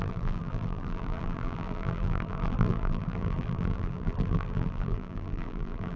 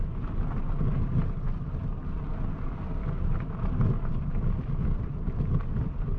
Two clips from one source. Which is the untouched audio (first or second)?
second